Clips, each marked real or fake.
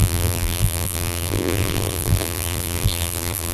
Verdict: fake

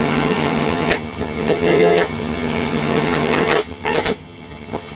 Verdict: fake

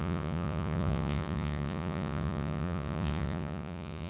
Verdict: fake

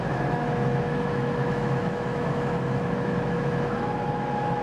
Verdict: fake